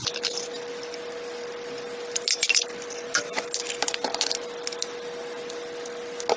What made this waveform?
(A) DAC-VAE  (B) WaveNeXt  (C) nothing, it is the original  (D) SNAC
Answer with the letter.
C